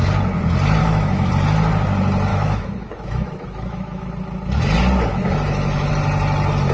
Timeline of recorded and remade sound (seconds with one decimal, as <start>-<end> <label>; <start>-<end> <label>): 0.0-0.8 recorded; 0.8-1.3 remade; 1.3-2.3 recorded; 2.3-4.1 remade; 4.1-5.1 recorded; 5.1-5.9 remade; 5.9-6.7 recorded